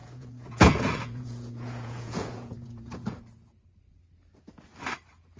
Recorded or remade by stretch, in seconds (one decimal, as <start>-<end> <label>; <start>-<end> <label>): 0.0-3.2 remade; 3.2-5.4 recorded